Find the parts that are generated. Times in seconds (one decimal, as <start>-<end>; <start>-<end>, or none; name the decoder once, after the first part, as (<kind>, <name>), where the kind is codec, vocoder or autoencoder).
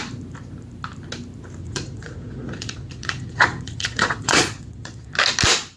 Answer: 1.6-5.1 (vocoder, Vocos)